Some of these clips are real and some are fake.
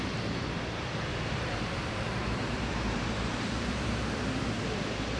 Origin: fake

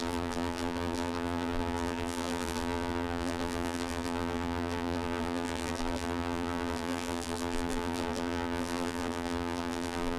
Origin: fake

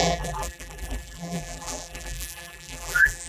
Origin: fake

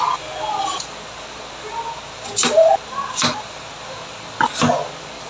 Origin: real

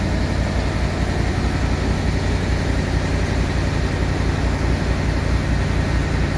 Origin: real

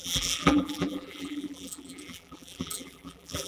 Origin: fake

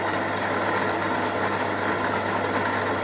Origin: real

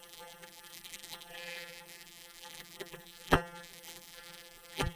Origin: fake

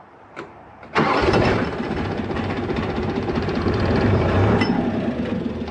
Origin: fake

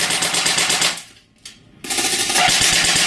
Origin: real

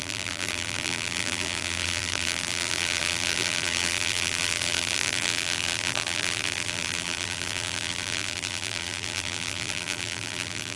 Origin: fake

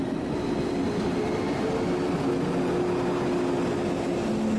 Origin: real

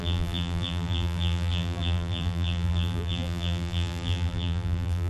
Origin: fake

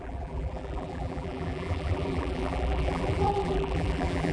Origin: fake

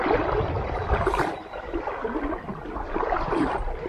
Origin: fake